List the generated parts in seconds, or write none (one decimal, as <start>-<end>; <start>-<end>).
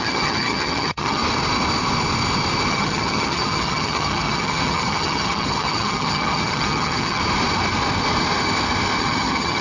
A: 0.0-1.2; 2.7-7.2; 9.0-9.6